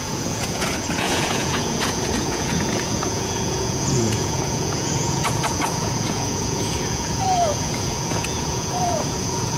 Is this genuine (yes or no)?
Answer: no